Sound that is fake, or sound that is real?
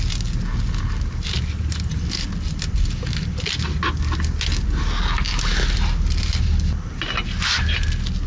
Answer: real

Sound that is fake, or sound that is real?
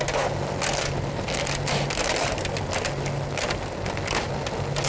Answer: real